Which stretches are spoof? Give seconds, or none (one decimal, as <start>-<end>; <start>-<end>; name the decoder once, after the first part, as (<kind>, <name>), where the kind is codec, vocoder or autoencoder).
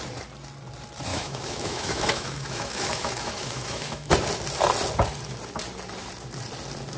1.1-4.1 (autoencoder, DAC-VAE)